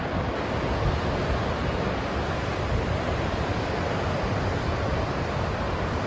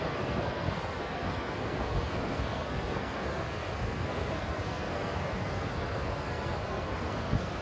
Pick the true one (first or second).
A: first